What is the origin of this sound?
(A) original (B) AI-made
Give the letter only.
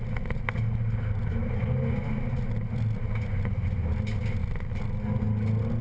A